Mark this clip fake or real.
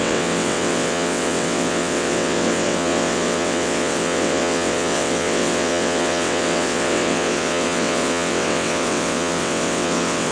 fake